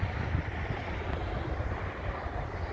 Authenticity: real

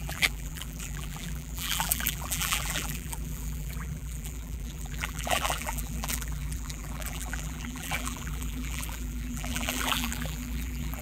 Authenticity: fake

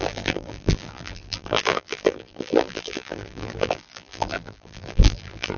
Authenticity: fake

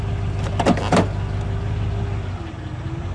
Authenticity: real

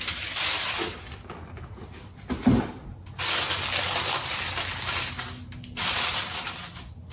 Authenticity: real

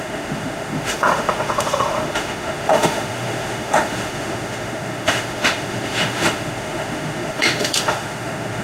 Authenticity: fake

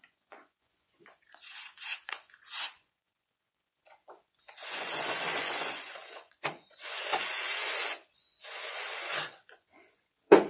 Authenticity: fake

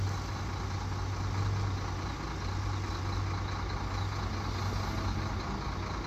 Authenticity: real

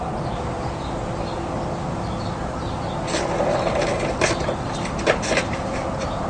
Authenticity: real